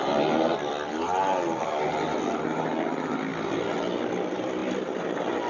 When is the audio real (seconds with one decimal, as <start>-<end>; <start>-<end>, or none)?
0.0-5.5